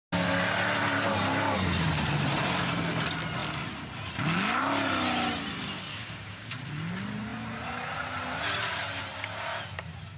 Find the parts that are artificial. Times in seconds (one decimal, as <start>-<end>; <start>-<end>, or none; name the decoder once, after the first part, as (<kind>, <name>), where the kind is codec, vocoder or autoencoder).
5.9-6.6 (codec, DAC)